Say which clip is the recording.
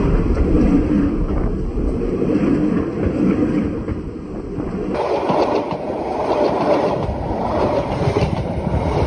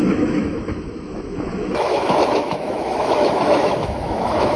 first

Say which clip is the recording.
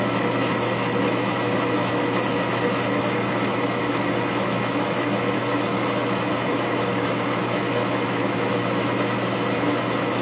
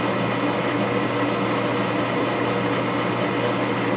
second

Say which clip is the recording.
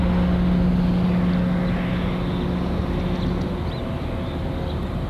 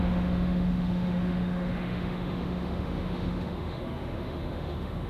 first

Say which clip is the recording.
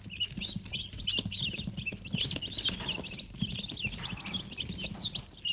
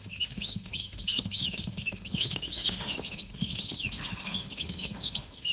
first